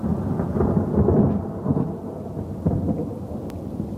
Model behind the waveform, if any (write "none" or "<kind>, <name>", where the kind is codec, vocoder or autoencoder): none